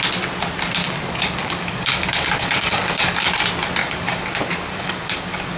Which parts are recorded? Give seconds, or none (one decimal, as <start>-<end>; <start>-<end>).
0.0-0.8; 3.3-3.8